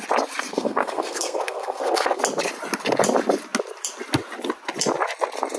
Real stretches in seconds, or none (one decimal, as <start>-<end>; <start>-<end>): 0.0-0.5; 2.2-5.6